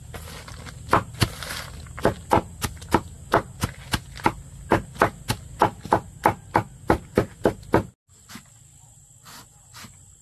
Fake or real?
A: real